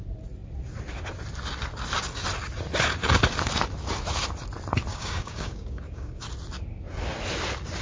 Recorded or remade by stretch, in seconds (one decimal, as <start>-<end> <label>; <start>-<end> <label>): 0.0-4.9 recorded; 4.9-6.2 remade; 6.2-7.8 recorded